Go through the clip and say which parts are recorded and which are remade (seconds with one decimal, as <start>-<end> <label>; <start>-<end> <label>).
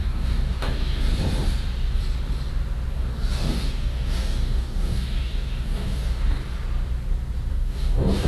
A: 0.0-1.1 remade; 1.1-2.9 recorded; 2.9-6.4 remade; 6.4-7.5 recorded; 7.5-8.3 remade